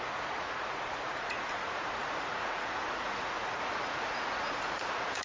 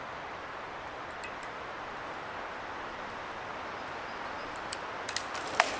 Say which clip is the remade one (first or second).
first